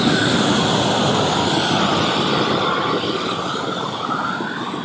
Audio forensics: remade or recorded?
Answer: recorded